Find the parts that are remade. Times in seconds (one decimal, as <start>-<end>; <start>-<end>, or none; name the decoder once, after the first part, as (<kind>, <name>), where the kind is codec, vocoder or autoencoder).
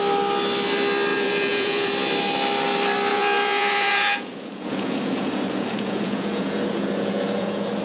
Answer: 1.1-1.9 (vocoder, Vocos); 3.1-7.8